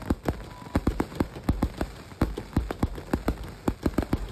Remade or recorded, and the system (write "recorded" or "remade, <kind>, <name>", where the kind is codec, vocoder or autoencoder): recorded